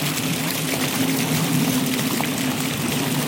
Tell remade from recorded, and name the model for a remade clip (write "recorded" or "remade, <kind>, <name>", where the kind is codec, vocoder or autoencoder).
remade, vocoder, BigVGAN v2